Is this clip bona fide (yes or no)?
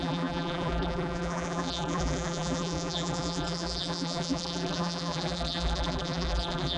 no